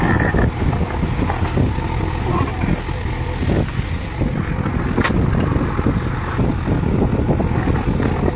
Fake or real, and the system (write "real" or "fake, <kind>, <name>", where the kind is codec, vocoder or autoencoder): real